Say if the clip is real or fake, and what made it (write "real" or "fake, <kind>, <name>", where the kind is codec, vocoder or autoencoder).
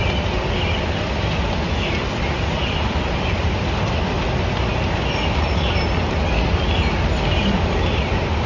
real